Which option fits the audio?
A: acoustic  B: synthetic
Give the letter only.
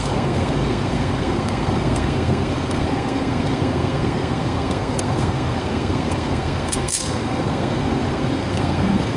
B